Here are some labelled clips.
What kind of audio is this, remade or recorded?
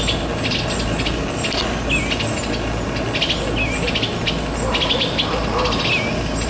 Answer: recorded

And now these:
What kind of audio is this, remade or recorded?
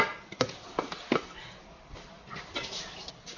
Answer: recorded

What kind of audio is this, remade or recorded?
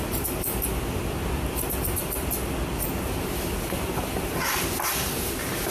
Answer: recorded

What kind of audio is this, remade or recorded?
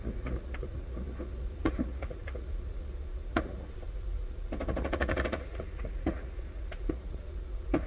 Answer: remade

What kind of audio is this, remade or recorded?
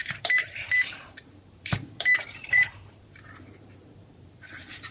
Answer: remade